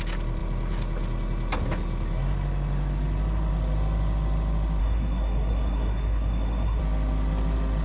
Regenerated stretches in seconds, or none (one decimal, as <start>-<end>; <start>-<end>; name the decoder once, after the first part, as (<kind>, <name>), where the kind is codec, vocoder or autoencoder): 4.8-6.8 (codec, SNAC)